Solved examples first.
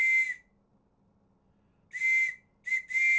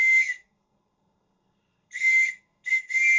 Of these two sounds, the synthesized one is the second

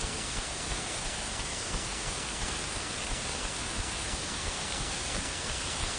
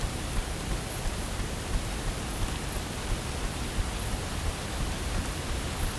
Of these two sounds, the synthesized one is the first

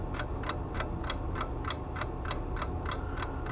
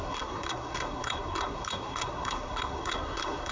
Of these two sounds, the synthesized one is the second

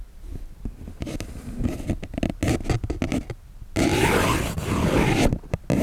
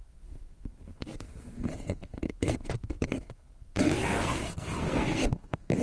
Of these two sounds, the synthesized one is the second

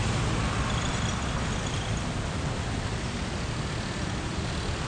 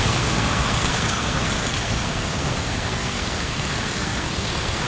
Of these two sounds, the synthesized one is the second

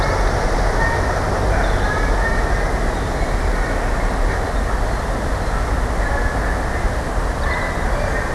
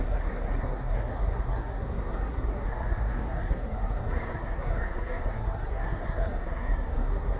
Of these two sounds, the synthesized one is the second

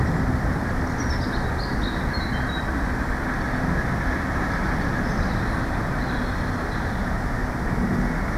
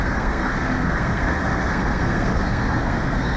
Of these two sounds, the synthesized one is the second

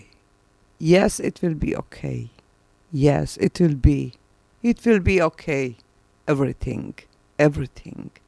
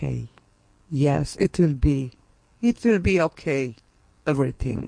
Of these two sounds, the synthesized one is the second